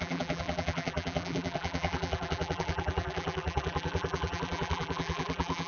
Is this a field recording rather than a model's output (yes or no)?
no